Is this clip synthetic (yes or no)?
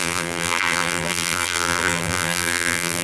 yes